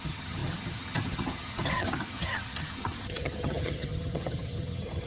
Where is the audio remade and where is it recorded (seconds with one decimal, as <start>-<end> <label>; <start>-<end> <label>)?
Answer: 0.0-5.1 remade